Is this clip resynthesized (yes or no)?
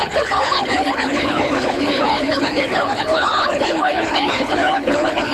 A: yes